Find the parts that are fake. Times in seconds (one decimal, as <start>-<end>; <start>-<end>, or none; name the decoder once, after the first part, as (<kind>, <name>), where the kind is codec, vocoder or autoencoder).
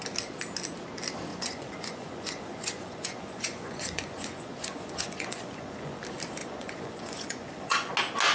1.3-6.0 (vocoder, Vocos); 6.4-7.9